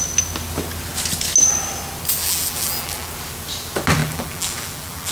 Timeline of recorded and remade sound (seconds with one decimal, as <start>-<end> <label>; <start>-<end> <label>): 0.0-2.2 recorded; 2.2-3.1 remade; 3.1-4.0 recorded; 4.0-5.1 remade